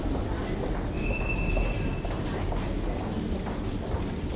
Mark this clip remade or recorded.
recorded